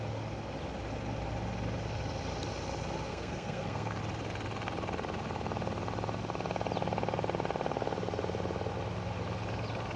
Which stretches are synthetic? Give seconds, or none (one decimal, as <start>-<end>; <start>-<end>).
3.1-4.0